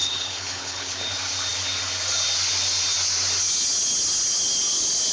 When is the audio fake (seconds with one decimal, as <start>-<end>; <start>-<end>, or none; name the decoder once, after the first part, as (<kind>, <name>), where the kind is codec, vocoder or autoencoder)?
0.0-0.9 (codec, HILCodec)